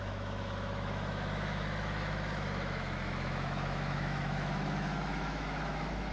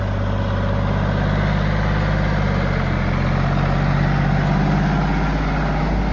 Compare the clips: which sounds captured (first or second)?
second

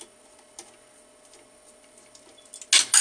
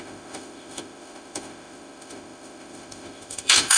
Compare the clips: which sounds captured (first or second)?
first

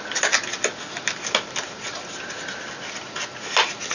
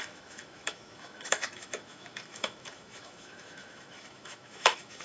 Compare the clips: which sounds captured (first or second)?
first